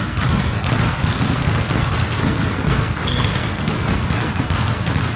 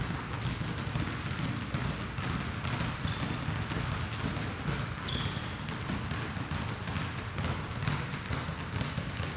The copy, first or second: first